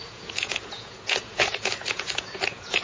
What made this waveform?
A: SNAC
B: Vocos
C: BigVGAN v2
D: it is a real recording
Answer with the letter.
B